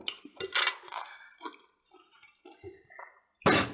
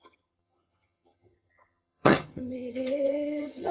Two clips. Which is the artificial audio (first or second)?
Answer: second